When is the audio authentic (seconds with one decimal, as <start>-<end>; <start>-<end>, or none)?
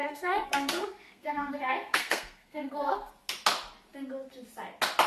3.1-5.1